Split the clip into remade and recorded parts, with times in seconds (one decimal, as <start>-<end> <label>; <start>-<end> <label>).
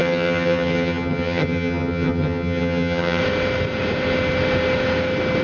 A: 0.0-3.2 remade; 3.2-5.4 recorded